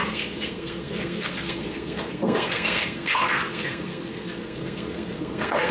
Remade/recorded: remade